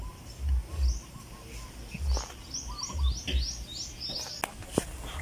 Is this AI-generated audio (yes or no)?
no